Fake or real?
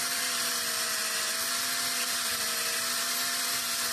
fake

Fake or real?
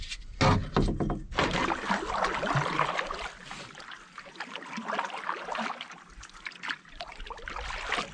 real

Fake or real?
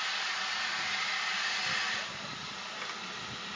real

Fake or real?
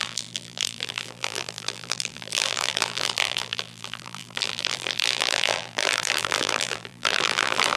fake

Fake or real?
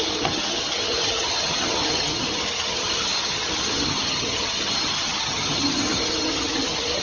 fake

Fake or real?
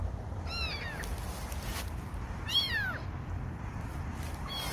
fake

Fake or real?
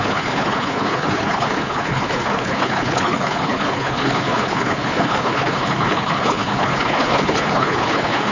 fake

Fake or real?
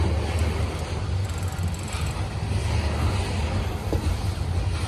real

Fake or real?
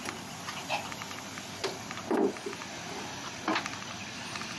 real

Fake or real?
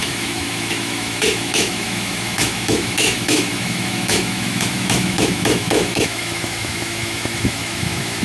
fake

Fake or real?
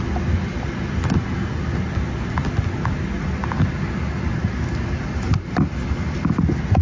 real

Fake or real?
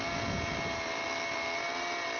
real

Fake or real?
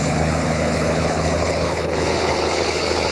fake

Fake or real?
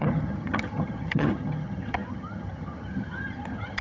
fake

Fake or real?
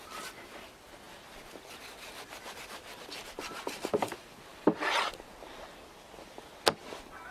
real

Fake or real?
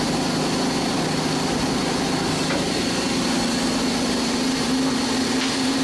real